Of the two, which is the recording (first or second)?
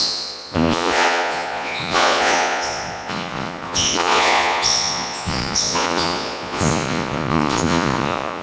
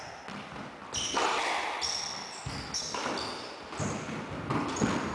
second